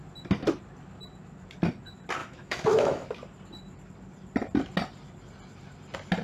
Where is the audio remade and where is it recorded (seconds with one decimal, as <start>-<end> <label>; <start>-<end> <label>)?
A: 0.0-2.2 recorded; 2.2-3.1 remade; 3.1-6.2 recorded